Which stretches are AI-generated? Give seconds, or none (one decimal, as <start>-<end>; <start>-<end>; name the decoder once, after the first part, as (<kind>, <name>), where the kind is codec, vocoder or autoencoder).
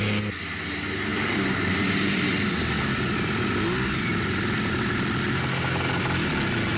1.1-2.5 (vocoder, BigVGAN v2)